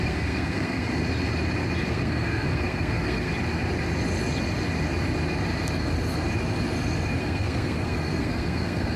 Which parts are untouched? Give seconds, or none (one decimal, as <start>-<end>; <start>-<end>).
0.9-1.9; 3.3-7.2